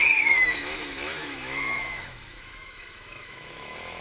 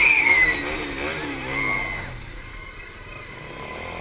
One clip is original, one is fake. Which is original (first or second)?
second